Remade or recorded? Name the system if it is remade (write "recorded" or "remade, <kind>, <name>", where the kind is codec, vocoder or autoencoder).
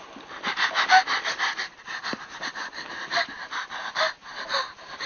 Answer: recorded